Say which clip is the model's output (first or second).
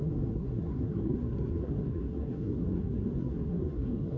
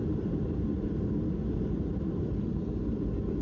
first